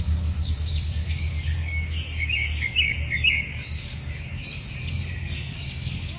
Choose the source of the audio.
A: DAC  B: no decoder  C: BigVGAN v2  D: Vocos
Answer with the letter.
A